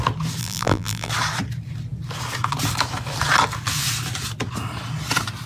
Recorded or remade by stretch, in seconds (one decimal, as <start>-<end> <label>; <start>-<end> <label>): 0.0-0.4 recorded; 0.4-1.1 remade; 1.1-5.5 recorded